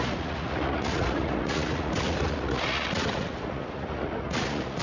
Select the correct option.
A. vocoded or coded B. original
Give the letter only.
A